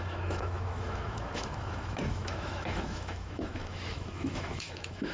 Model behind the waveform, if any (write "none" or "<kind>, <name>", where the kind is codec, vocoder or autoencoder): autoencoder, DAC-VAE